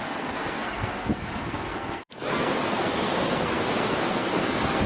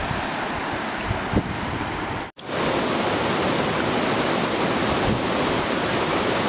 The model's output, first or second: first